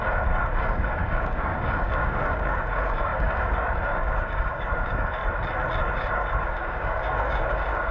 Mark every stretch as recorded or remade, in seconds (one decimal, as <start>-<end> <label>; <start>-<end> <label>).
0.0-5.2 remade; 5.2-5.8 recorded; 5.8-7.9 remade